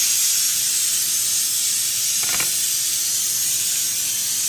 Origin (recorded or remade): recorded